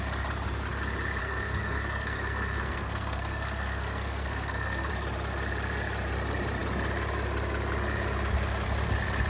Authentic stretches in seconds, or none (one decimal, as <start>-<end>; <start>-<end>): 0.0-1.2; 4.9-9.3